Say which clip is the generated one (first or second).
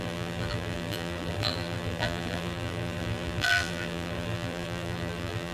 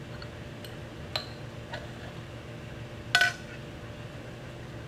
first